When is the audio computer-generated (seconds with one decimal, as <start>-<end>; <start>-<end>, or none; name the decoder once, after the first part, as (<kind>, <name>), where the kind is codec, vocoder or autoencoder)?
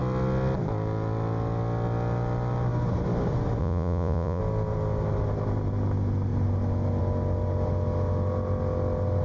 3.6-4.4 (vocoder, Vocos)